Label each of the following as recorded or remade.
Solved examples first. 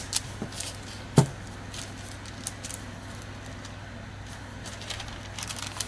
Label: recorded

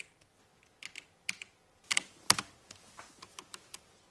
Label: recorded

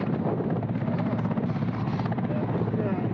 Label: recorded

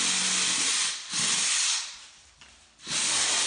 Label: recorded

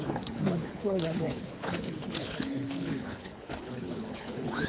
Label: remade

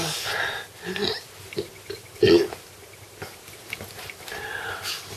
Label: recorded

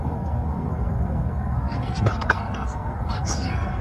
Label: remade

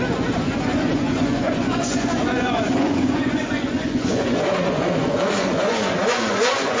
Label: remade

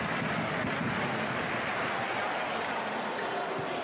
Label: recorded